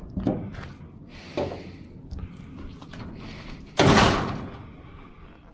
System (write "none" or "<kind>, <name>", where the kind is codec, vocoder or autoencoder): none